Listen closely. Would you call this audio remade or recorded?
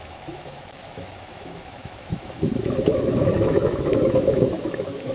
remade